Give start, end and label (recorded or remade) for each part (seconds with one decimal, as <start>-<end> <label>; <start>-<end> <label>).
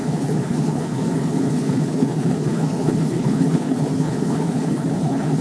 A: 0.0-5.4 remade